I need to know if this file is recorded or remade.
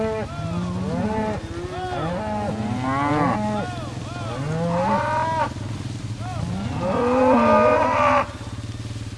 recorded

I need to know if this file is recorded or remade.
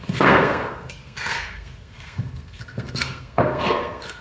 remade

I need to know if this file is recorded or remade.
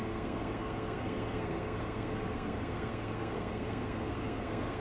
remade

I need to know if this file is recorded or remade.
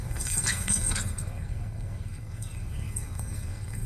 remade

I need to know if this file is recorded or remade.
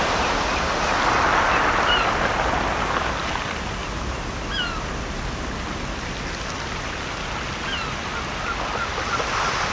recorded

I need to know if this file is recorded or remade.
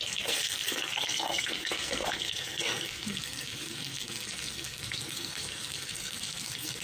remade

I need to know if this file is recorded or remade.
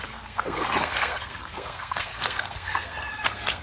remade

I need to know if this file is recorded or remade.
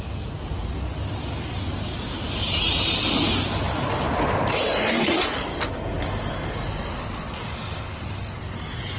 recorded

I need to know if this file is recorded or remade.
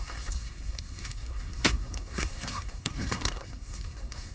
remade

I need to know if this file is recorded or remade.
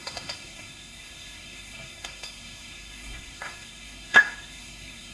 remade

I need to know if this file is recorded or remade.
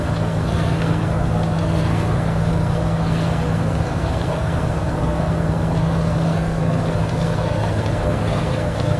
remade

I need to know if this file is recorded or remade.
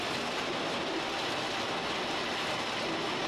recorded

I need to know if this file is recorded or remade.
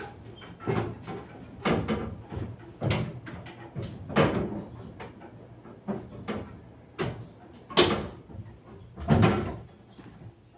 recorded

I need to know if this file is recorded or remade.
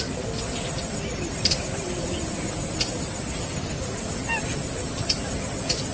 recorded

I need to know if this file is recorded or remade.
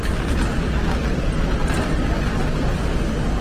recorded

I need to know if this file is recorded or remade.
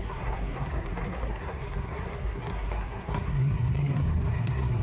remade